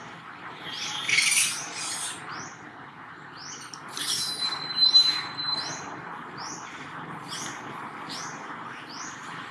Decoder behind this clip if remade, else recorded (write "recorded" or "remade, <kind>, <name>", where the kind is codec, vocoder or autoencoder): recorded